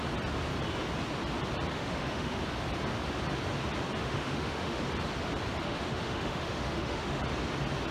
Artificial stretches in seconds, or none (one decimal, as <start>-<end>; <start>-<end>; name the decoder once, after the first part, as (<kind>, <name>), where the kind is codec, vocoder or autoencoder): 1.7-2.4 (autoencoder, DAC-VAE); 4.0-4.8; 5.6-7.2

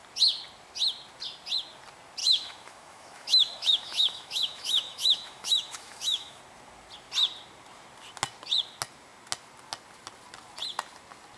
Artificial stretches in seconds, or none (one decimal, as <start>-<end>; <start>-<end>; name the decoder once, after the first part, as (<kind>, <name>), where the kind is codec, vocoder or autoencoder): 2.2-6.4 (autoencoder, DAC-VAE)

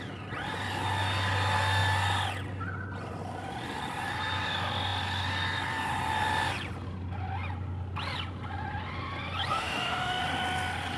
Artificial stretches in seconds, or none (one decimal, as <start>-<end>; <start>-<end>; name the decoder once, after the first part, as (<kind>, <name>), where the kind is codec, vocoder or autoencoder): 9.5-10.2 (autoencoder, DAC-VAE)

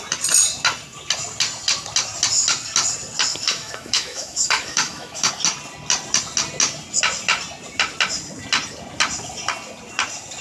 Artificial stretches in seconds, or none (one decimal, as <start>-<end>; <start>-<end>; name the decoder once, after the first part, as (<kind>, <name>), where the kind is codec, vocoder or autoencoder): 3.3-5.3 (autoencoder, DAC-VAE)

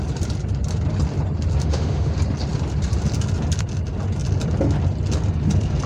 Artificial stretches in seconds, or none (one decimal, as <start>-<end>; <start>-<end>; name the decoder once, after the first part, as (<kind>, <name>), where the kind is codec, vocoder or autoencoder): 1.6-2.1 (autoencoder, DAC-VAE)

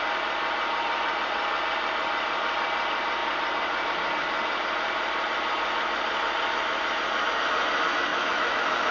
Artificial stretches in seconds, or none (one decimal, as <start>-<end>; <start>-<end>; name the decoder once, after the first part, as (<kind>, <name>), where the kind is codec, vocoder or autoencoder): 8.1-8.9 (autoencoder, DAC-VAE)